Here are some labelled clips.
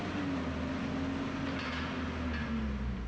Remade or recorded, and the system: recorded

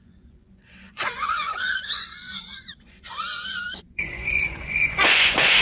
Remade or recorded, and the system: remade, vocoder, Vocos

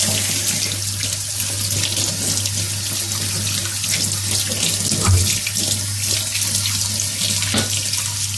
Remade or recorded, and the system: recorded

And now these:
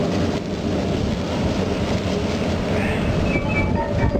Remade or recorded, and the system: recorded